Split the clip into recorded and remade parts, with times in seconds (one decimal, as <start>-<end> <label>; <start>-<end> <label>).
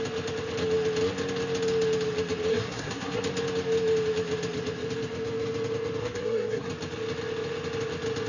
0.0-2.5 recorded; 2.5-3.2 remade; 3.2-6.0 recorded; 6.0-6.7 remade; 6.7-8.3 recorded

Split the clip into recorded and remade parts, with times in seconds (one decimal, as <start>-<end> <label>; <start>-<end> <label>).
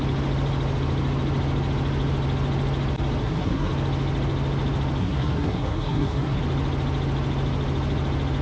0.0-3.2 recorded; 3.2-3.7 remade; 3.7-5.0 recorded; 5.0-6.4 remade; 6.4-8.4 recorded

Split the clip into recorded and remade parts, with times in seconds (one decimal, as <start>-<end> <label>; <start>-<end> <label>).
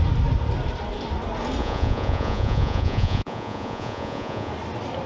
0.0-1.6 recorded; 1.6-4.5 remade; 4.5-5.1 recorded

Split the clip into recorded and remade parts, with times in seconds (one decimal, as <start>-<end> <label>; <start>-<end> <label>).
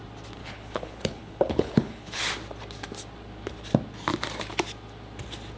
0.0-0.4 recorded; 0.4-2.2 remade; 2.2-5.6 recorded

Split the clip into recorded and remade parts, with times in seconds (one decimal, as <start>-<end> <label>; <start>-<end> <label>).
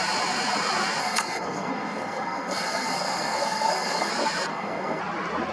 0.0-1.0 recorded; 1.0-4.1 remade; 4.1-4.5 recorded; 4.5-5.0 remade; 5.0-5.5 recorded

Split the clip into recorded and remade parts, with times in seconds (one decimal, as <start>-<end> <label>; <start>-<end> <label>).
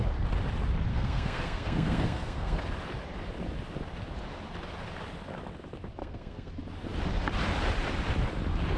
0.0-0.9 recorded; 0.9-2.6 remade; 2.6-6.0 recorded; 6.0-6.5 remade; 6.5-8.8 recorded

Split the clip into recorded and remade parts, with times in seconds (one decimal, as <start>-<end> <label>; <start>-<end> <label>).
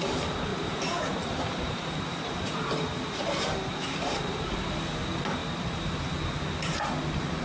0.0-0.5 recorded; 0.5-4.7 remade; 4.7-7.4 recorded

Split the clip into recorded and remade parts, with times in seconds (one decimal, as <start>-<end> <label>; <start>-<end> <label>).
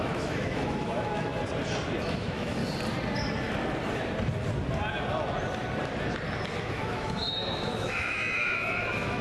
0.0-1.3 remade; 1.3-2.0 recorded; 2.0-2.6 remade; 2.6-6.6 recorded; 6.6-9.2 remade